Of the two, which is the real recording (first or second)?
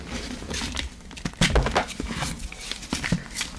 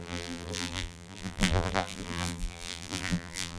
first